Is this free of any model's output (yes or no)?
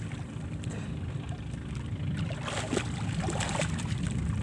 yes